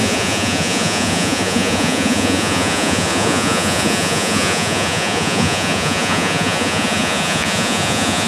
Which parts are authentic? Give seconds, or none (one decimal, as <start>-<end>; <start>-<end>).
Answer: none